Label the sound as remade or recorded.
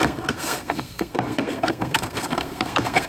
remade